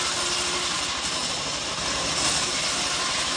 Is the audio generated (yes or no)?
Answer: no